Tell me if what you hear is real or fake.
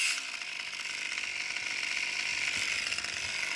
real